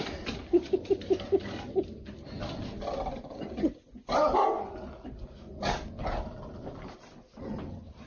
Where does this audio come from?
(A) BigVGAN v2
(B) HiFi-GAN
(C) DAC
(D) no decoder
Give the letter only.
D